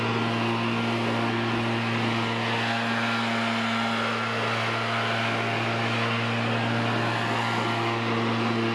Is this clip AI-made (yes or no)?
no